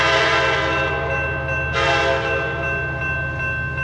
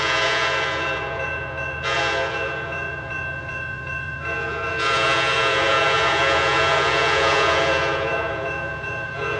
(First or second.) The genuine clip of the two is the first